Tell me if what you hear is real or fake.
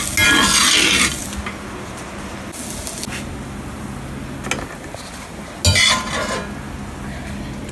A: real